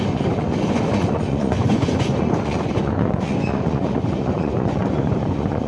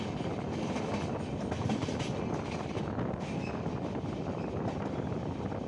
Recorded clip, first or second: second